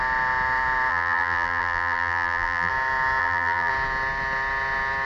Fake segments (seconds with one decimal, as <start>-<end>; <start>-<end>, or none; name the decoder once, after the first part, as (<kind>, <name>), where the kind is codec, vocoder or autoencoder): 0.9-2.7 (vocoder, BigVGAN v2); 3.2-3.7